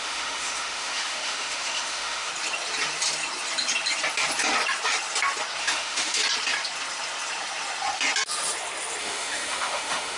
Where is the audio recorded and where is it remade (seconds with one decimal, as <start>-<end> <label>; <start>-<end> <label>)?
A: 0.0-2.3 remade; 2.3-5.6 recorded; 5.6-6.2 remade; 6.2-9.0 recorded; 9.0-10.2 remade